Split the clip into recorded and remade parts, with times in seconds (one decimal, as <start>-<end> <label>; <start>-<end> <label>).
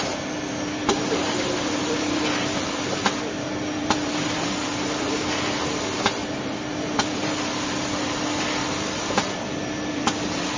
0.0-10.6 remade